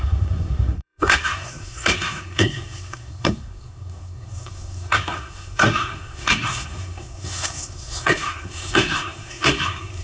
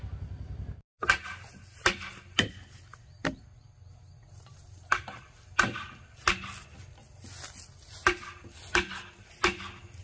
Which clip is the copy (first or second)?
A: first